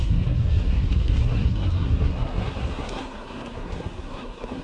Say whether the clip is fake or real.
fake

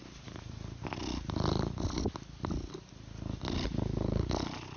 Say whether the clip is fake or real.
real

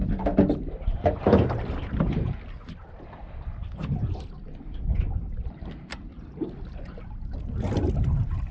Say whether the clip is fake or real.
real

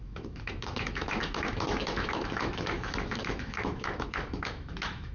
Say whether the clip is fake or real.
fake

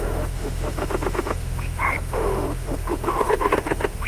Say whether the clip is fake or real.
fake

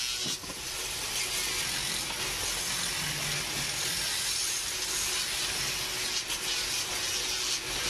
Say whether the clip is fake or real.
real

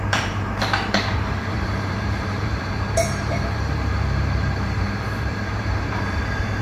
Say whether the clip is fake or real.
fake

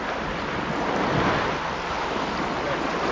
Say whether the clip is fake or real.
real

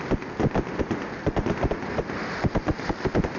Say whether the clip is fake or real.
real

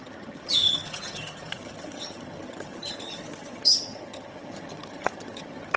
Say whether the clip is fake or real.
fake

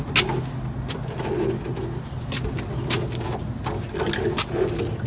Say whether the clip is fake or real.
real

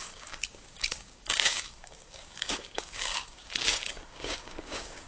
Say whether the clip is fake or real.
fake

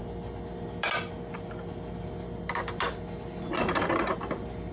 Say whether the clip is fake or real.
real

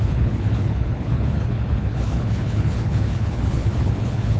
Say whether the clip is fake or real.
fake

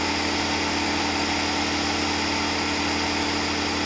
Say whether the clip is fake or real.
real